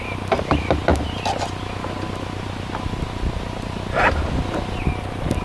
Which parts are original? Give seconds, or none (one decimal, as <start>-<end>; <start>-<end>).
0.0-5.4